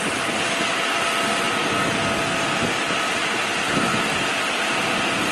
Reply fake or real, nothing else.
real